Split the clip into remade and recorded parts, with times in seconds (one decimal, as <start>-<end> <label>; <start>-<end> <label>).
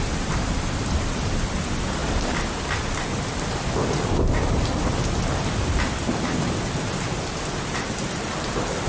0.0-8.9 recorded